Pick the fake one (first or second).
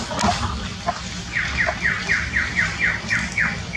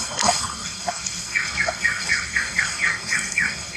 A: second